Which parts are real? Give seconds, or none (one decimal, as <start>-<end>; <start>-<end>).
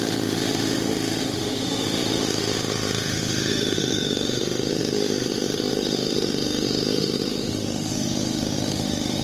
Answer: none